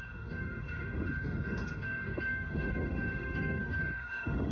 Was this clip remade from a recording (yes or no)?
yes